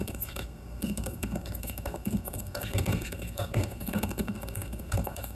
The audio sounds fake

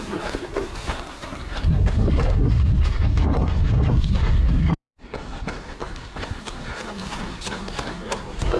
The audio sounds fake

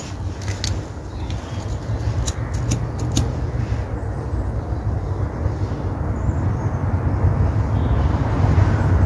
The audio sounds real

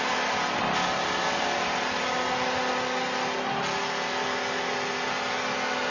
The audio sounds real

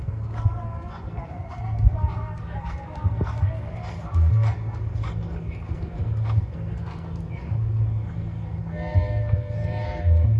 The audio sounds fake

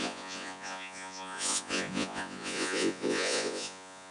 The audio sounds fake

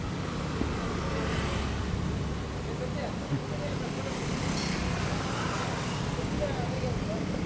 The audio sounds real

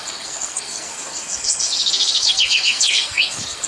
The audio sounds fake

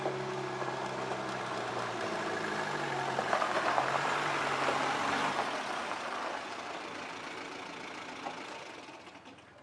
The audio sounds real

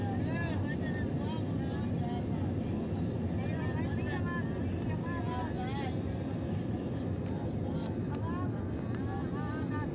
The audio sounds real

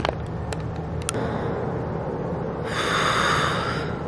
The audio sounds real